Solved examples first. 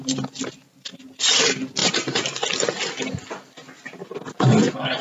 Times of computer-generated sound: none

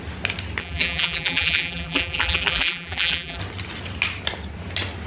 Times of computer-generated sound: 0.6-3.4